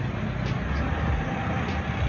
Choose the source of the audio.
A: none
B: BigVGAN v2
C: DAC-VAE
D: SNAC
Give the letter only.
A